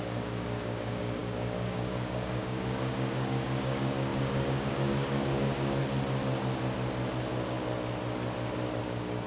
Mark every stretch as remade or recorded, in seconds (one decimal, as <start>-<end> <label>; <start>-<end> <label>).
0.0-5.8 remade; 5.8-8.8 recorded; 8.8-9.3 remade